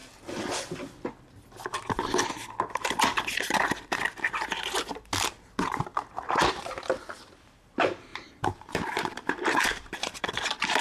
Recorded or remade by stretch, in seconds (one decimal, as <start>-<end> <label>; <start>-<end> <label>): 0.0-8.1 recorded; 8.1-10.2 remade; 10.2-10.8 recorded